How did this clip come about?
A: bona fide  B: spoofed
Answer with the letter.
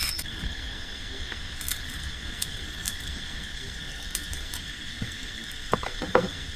B